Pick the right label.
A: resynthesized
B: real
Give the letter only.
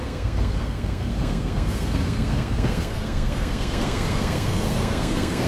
A